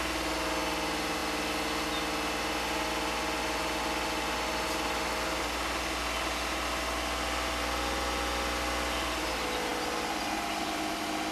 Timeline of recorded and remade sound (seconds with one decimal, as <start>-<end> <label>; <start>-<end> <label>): 0.0-11.3 recorded